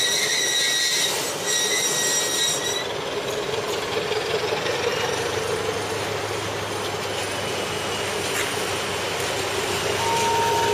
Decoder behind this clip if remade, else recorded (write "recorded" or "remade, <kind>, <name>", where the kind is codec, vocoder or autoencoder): recorded